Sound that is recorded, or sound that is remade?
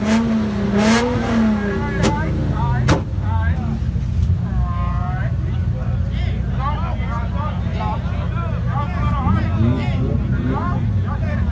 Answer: recorded